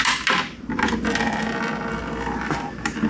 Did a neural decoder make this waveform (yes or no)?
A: no